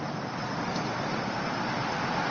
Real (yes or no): yes